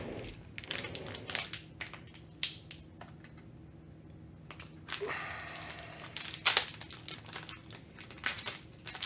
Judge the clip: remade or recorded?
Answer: recorded